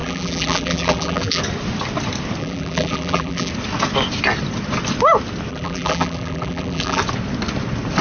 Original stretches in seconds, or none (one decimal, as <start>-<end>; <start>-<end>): 1.4-2.4; 3.5-5.5; 7.0-8.0